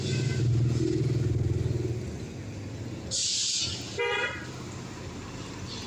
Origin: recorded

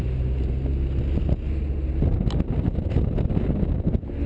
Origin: recorded